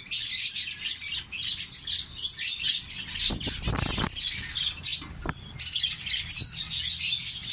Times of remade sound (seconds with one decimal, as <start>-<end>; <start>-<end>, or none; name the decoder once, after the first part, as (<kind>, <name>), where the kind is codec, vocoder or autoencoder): none